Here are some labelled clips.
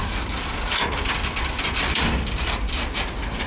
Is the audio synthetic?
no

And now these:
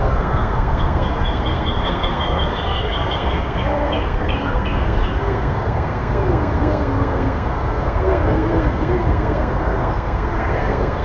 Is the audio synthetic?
yes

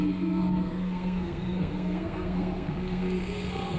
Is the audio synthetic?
yes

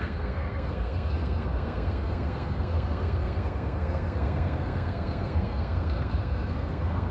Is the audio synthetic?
yes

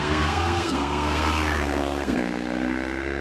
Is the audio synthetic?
yes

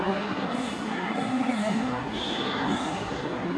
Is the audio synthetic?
yes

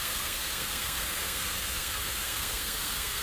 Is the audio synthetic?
yes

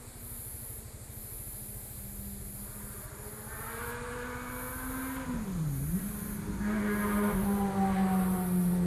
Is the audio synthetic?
no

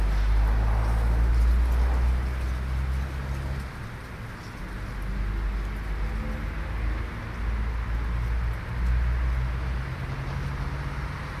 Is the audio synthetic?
no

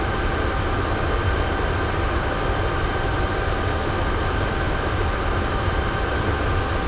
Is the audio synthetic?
no